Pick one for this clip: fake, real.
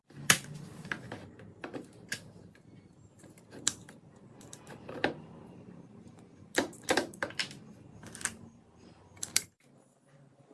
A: fake